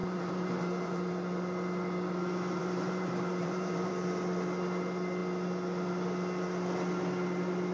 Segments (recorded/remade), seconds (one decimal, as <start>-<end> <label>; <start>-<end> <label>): 0.0-1.1 remade; 1.1-2.6 recorded; 2.6-3.9 remade; 3.9-7.7 recorded